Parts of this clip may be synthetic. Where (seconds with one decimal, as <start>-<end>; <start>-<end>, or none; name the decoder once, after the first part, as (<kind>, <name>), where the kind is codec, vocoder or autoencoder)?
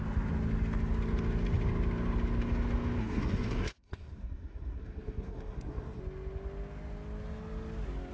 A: 3.0-6.0 (codec, SNAC)